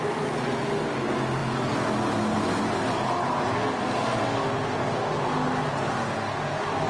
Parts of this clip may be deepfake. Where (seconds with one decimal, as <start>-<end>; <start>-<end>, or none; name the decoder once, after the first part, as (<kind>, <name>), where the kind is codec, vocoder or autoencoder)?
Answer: none